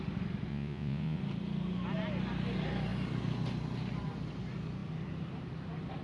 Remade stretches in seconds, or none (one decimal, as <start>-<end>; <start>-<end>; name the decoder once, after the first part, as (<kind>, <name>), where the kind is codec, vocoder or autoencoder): 0.5-1.2 (vocoder, Vocos)